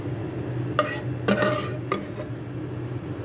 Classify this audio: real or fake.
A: real